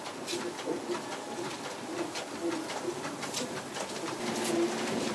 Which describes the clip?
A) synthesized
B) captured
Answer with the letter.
B